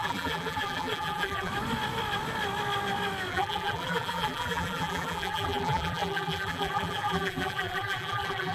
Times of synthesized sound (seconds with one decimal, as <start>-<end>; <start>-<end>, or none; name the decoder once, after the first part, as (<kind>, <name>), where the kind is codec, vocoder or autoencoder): 0.0-1.5 (vocoder, BigVGAN v2); 3.3-8.5